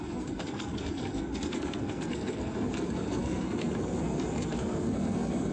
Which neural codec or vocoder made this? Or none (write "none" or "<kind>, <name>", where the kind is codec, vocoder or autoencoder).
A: codec, SNAC